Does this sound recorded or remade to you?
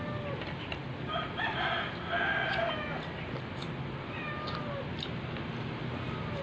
recorded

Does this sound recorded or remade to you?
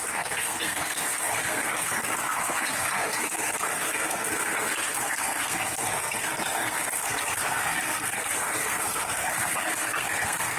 remade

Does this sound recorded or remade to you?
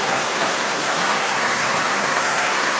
remade